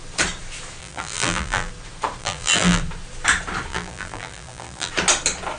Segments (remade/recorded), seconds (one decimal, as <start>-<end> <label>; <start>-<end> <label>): 0.0-0.8 recorded; 0.8-1.7 remade; 1.7-2.2 recorded; 2.2-2.8 remade; 2.8-3.7 recorded; 3.7-4.9 remade; 4.9-5.6 recorded